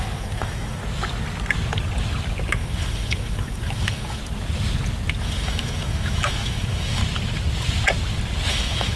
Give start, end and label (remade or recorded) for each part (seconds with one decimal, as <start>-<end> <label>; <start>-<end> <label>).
0.0-0.8 remade; 0.8-2.5 recorded; 2.5-4.2 remade; 4.2-5.2 recorded; 5.2-7.0 remade; 7.0-8.5 recorded; 8.5-9.0 remade